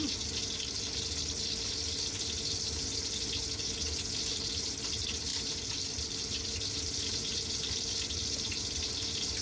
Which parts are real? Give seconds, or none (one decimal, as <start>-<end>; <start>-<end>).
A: 0.0-5.3; 8.9-9.4

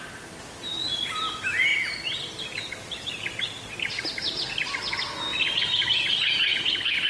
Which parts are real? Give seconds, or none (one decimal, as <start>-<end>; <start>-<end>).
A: 0.0-5.3; 6.1-7.1

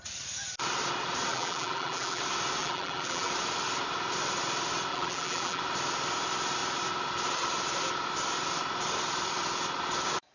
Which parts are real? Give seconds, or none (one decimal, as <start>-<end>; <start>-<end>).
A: 0.0-1.3; 2.2-2.6; 3.3-4.9; 5.6-10.3

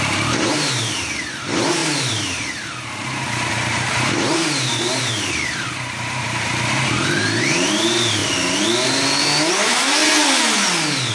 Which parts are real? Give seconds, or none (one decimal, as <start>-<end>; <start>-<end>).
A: 8.2-9.5; 10.0-11.1

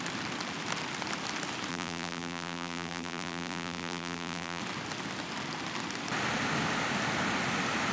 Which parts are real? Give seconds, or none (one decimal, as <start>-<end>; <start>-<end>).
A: 0.0-1.7; 4.6-7.9

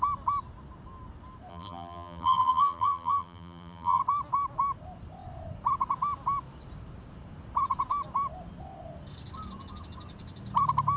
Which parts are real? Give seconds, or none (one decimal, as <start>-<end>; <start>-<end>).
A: 0.0-1.5; 4.0-11.0